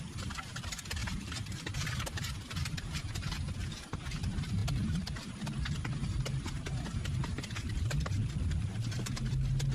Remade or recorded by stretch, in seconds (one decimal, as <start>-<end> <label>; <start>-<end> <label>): 0.0-9.7 remade